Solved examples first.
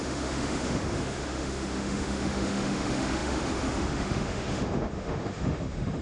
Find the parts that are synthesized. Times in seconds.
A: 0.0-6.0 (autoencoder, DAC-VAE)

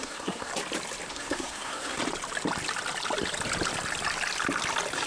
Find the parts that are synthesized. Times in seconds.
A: 0.0-0.5 (codec, SNAC); 1.1-2.0

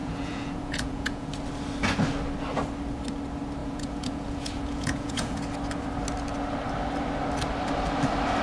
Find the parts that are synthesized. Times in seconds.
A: 0.0-1.3 (vocoder, Vocos); 3.6-5.4